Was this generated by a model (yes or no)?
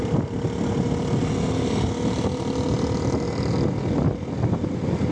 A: no